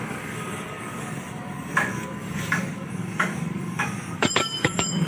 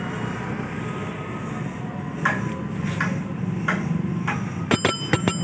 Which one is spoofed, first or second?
first